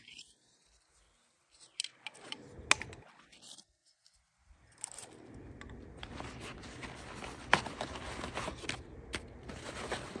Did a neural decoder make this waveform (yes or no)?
no